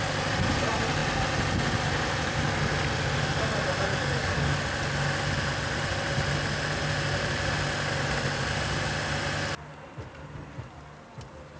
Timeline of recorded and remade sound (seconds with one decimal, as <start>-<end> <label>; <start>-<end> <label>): 0.0-3.9 recorded; 3.9-4.6 remade; 4.6-11.6 recorded